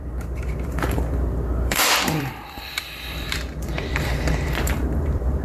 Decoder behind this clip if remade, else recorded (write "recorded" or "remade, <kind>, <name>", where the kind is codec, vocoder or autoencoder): remade, vocoder, BigVGAN v2